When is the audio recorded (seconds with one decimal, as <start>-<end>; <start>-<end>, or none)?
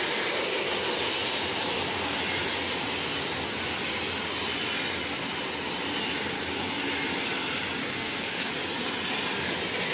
0.0-7.8; 8.5-9.9